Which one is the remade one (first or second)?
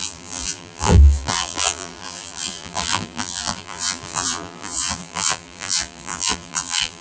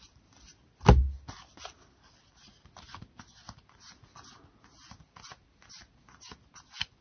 first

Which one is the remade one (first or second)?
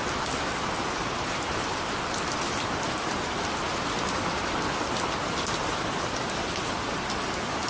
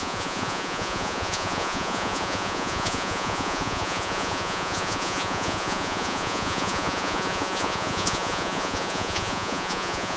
second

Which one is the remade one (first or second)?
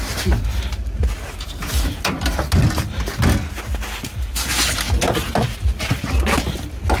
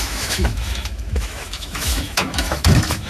second